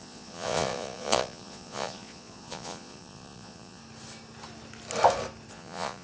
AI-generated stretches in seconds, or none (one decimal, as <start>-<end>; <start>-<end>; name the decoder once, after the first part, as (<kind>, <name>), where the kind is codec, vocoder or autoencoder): 0.0-3.8 (vocoder, Vocos); 5.5-6.0